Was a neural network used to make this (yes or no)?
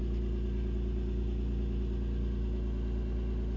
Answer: no